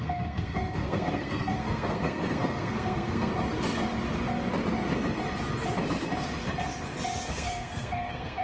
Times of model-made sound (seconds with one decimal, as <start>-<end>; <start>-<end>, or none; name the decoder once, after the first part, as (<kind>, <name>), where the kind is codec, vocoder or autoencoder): 0.0-3.3 (codec, SNAC); 7.3-8.4